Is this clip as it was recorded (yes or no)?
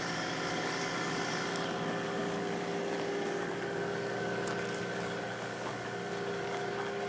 no